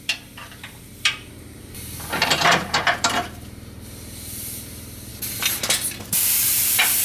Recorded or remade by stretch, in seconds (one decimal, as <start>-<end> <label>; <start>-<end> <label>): 0.0-5.1 remade; 5.1-6.0 recorded; 6.0-7.0 remade